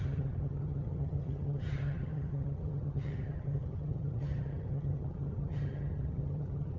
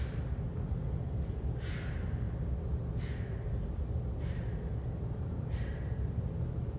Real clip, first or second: second